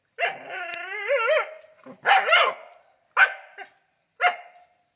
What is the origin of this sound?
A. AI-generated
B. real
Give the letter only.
B